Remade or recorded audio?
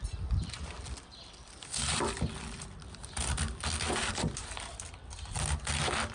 remade